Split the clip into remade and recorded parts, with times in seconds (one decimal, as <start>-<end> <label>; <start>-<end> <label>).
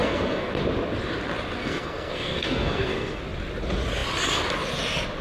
0.0-0.6 remade; 0.6-1.6 recorded; 1.6-3.2 remade; 3.2-5.2 recorded